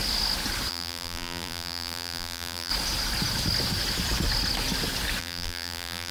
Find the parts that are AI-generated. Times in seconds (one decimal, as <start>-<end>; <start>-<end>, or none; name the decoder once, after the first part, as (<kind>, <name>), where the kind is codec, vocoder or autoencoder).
0.7-2.7 (vocoder, BigVGAN v2); 5.2-6.1